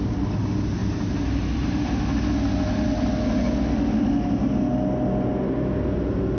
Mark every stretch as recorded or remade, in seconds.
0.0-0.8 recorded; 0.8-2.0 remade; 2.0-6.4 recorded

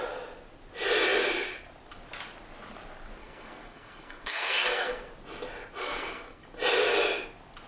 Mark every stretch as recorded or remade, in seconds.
0.0-3.2 recorded; 3.2-5.1 remade; 5.1-5.8 recorded; 5.8-6.4 remade; 6.4-7.7 recorded

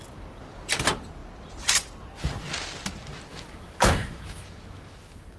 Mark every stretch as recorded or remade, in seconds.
0.0-3.3 recorded; 3.3-5.4 remade

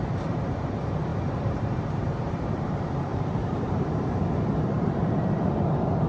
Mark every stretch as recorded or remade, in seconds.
0.0-6.1 remade